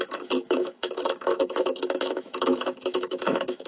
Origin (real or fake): fake